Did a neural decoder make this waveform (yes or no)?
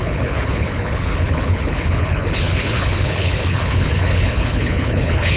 yes